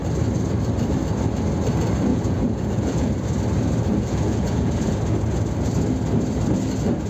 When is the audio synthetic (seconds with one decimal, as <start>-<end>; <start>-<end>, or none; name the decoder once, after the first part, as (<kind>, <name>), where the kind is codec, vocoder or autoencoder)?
2.1-3.1 (vocoder, Vocos); 3.9-5.0